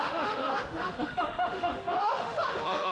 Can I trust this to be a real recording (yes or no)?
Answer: no